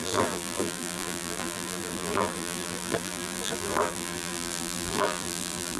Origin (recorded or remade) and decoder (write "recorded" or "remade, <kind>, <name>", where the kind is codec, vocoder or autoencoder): remade, vocoder, BigVGAN v2